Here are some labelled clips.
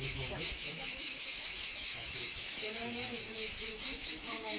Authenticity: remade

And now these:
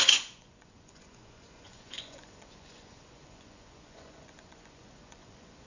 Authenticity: remade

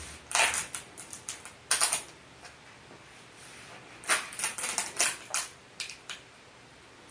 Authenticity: recorded